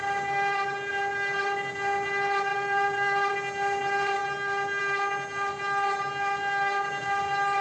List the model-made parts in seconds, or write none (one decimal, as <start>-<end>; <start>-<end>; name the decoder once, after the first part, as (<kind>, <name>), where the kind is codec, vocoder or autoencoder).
2.5-3.3 (vocoder, BigVGAN v2)